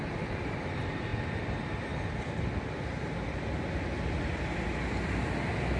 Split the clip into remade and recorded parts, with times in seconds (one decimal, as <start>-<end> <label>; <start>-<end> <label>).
0.0-5.8 recorded